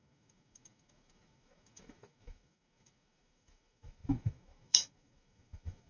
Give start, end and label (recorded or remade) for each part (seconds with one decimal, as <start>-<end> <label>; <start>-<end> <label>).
0.0-5.9 remade